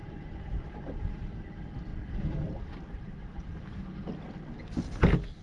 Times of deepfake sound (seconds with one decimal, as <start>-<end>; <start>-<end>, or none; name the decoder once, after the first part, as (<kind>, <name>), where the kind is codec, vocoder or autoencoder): 0.0-1.4 (vocoder, BigVGAN v2); 1.9-3.4